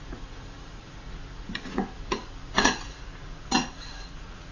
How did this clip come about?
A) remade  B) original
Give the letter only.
A